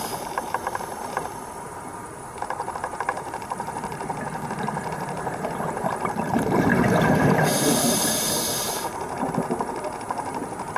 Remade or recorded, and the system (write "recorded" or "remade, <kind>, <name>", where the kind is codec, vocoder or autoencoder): remade, vocoder, BigVGAN v2